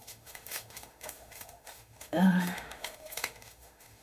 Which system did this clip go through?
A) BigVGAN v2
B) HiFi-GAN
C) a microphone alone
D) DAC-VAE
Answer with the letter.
D